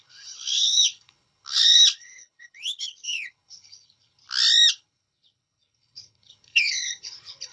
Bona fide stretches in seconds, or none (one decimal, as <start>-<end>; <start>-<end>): 4.2-4.7